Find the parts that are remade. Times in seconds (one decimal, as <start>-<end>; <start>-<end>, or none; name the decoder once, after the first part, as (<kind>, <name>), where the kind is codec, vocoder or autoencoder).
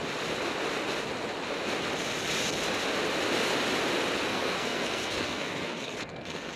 4.3-6.6 (codec, SNAC)